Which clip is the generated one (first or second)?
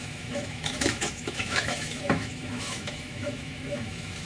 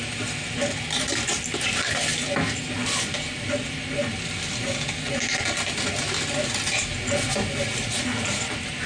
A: first